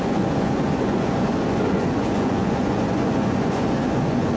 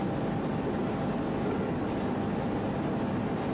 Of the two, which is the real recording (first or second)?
second